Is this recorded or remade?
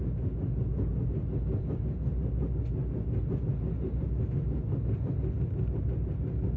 recorded